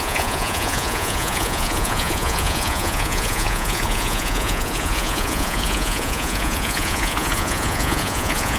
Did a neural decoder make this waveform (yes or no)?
yes